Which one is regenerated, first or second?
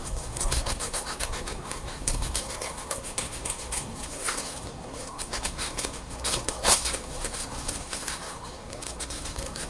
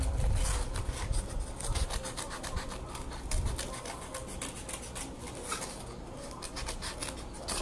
first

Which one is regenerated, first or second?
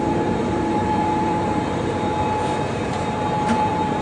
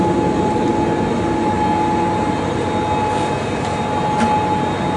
first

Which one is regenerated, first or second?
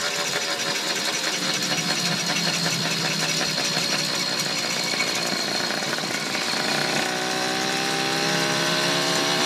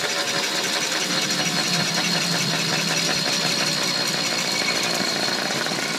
second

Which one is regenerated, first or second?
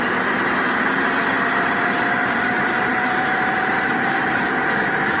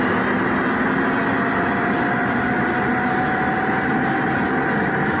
first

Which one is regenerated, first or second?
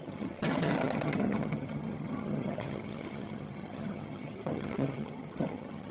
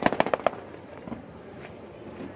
first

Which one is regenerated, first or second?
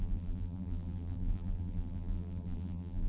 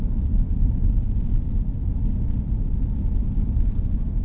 first